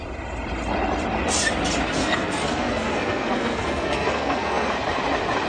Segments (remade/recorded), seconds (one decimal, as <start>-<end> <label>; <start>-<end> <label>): 0.0-2.0 recorded; 2.0-4.7 remade; 4.7-5.5 recorded